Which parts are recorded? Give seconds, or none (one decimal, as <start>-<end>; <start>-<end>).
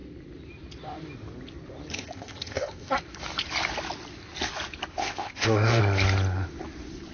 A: 0.0-1.9; 2.9-4.9; 5.8-7.1